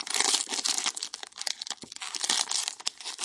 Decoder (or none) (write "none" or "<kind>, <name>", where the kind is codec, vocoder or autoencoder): none